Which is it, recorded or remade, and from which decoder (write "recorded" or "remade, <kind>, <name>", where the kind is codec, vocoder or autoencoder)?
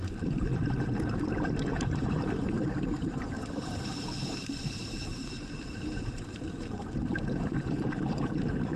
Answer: remade, vocoder, BigVGAN v2